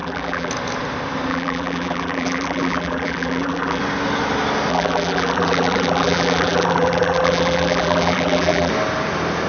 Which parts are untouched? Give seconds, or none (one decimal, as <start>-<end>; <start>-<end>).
0.5-1.3; 3.8-4.7; 8.7-9.5